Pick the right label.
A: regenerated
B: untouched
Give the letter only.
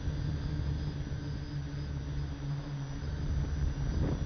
B